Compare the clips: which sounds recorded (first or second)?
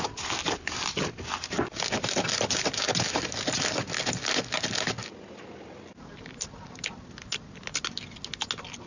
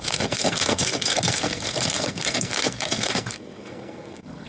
first